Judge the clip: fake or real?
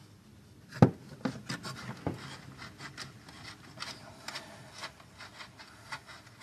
real